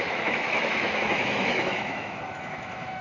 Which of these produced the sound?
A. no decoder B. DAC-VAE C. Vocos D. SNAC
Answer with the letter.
B